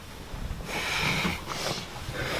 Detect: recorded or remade recorded